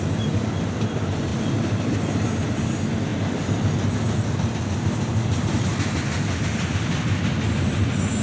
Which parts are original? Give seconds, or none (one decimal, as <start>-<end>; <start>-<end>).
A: 0.0-1.3; 1.9-3.1; 3.7-8.2